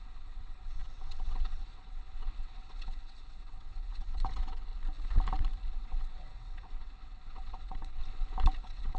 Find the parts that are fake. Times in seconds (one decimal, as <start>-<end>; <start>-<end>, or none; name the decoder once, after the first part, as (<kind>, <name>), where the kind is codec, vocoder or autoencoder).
0.0-4.7 (vocoder, WaveNeXt); 5.7-8.0; 8.6-9.0

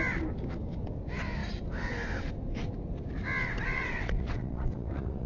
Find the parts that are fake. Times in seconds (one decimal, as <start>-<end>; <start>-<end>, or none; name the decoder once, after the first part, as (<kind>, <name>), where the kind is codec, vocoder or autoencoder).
3.7-5.3 (vocoder, WaveNeXt)